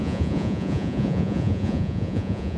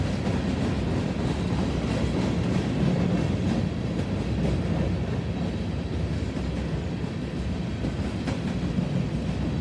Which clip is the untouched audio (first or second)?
second